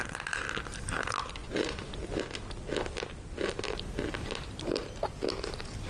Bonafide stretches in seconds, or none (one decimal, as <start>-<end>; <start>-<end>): 0.0-1.4; 1.9-5.9